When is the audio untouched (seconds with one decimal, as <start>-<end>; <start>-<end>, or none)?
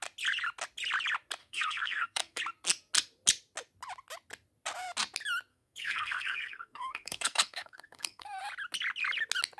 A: 0.0-1.4; 2.4-5.5; 8.4-9.6